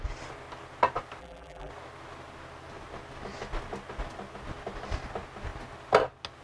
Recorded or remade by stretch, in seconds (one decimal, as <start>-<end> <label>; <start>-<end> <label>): 0.0-1.2 recorded; 1.2-1.7 remade; 1.7-6.4 recorded